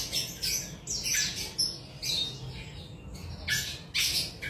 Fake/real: real